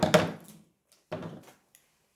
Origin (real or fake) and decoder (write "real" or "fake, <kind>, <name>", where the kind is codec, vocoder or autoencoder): real